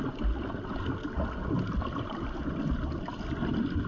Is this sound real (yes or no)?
yes